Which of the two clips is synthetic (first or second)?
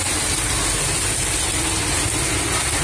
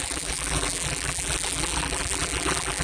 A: second